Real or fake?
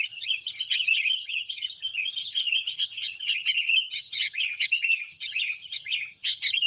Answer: fake